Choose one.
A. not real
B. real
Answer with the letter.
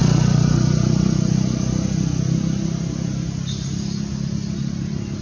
B